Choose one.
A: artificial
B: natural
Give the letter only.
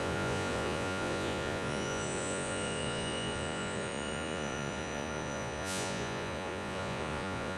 A